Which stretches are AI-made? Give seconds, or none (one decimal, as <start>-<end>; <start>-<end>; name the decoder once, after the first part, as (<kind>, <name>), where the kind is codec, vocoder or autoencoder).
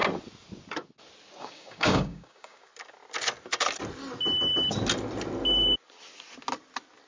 1.4-2.7 (codec, DAC)